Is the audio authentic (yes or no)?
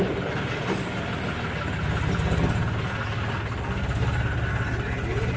yes